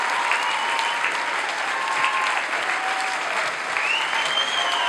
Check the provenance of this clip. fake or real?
real